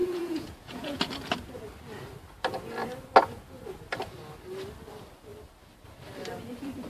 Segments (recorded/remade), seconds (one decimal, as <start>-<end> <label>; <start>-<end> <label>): 0.0-1.0 remade; 1.0-6.9 recorded